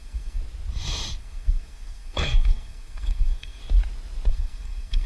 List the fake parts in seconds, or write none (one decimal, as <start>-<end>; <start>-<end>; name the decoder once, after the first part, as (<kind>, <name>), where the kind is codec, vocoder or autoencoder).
0.0-0.4 (codec, SNAC); 1.2-3.6; 4.3-5.1